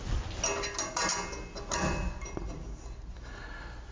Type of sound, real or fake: real